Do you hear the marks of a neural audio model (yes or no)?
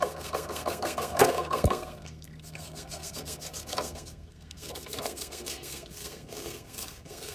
yes